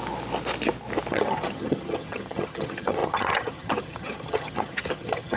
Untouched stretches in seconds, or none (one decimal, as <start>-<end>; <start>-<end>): 0.0-1.1